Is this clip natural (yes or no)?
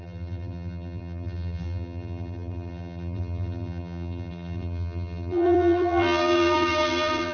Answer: no